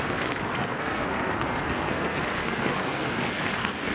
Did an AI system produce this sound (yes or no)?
yes